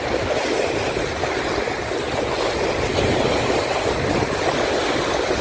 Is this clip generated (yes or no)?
no